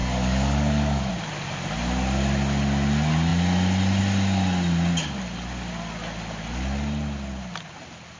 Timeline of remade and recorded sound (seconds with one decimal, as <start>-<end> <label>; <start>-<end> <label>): 0.0-1.1 remade; 1.1-8.2 recorded